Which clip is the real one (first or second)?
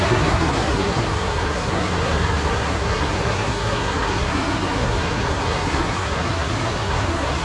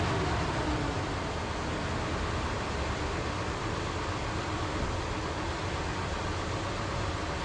second